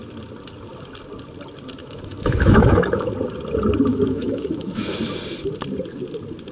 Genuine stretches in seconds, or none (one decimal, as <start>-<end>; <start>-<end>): 0.0-1.8; 3.1-3.9; 4.9-6.5